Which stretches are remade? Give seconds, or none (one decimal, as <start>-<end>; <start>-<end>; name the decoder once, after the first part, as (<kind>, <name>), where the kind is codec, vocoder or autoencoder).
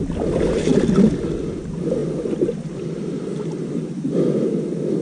2.0-4.1 (vocoder, BigVGAN v2)